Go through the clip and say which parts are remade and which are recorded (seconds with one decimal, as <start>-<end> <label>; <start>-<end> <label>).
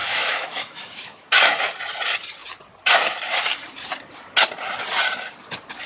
0.0-1.6 remade; 1.6-5.9 recorded